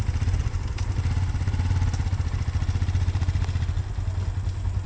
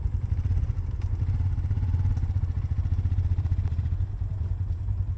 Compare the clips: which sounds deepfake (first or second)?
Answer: second